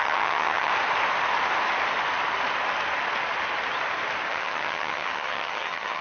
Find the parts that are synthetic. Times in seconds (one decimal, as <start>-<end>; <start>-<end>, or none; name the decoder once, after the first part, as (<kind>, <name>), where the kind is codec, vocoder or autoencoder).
0.0-0.7 (vocoder, HiFi-GAN); 4.3-6.0